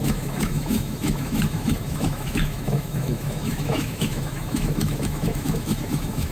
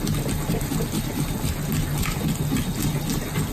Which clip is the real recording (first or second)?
second